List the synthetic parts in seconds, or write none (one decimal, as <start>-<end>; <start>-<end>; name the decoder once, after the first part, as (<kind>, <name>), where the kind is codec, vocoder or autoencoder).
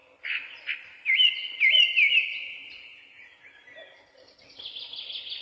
none